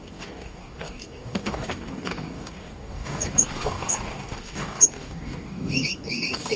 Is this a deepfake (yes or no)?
yes